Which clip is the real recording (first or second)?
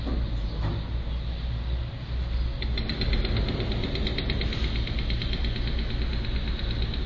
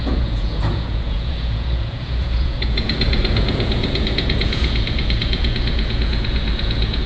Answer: first